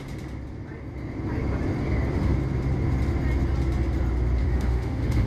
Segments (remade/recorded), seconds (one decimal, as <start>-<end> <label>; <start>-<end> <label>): 0.0-4.4 recorded; 4.4-5.3 remade